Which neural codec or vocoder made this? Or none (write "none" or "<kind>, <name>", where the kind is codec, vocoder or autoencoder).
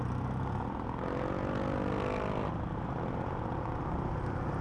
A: none